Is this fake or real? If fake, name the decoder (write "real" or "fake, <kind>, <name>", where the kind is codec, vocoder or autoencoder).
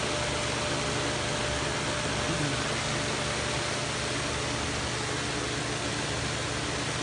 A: real